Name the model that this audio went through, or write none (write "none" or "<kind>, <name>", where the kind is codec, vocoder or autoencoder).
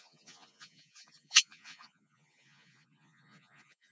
vocoder, Vocos